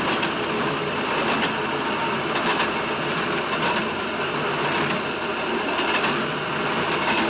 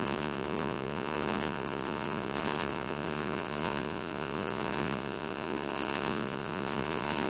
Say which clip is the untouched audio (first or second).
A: first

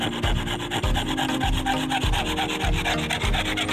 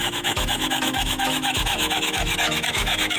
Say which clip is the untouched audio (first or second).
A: first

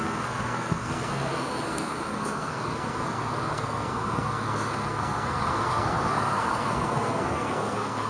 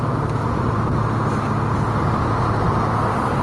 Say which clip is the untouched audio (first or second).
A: second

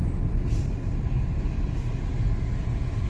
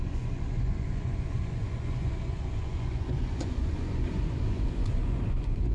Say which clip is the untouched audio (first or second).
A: first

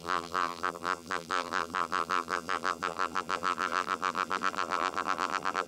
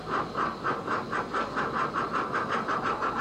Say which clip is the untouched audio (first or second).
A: second